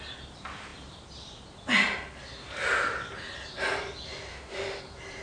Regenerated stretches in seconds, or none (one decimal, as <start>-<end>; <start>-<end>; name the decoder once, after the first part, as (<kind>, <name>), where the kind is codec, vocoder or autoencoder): 4.3-4.8 (autoencoder, DAC-VAE)